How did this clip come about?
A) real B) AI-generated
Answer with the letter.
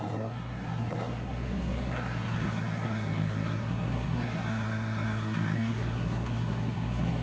B